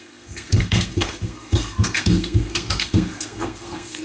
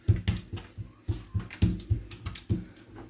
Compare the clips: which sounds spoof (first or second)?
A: first